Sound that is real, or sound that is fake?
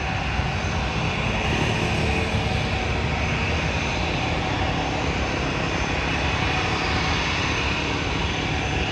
real